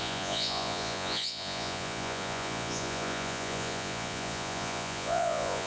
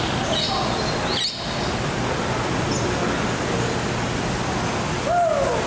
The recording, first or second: second